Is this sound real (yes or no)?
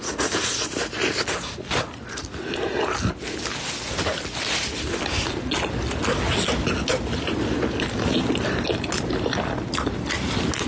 yes